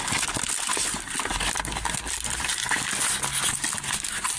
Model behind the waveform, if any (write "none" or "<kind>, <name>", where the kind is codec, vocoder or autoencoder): none